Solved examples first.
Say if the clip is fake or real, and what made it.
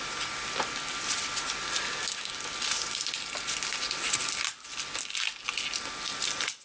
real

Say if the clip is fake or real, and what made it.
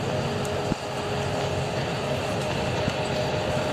real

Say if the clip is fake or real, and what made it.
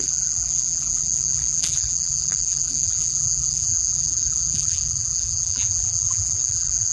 fake, vocoder, BigVGAN v2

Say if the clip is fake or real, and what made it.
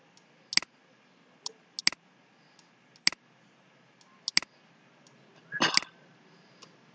real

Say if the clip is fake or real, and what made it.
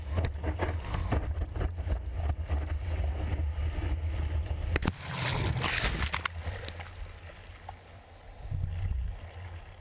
real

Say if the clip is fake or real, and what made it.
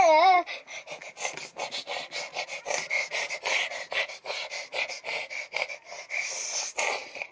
fake, vocoder, BigVGAN v2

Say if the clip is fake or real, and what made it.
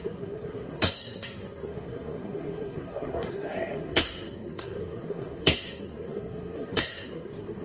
fake, codec, SNAC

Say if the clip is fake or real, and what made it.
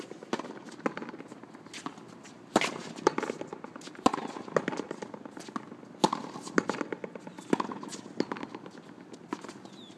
real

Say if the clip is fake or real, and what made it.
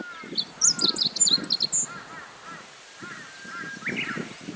real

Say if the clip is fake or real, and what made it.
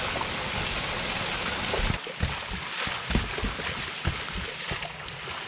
real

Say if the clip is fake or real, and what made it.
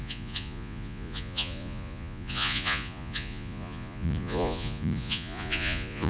fake, vocoder, Vocos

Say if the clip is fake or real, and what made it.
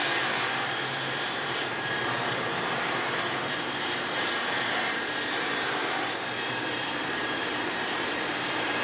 fake, vocoder, BigVGAN v2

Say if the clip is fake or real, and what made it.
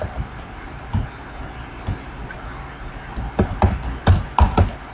real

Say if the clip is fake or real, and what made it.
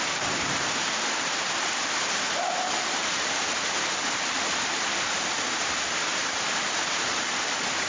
fake, vocoder, BigVGAN v2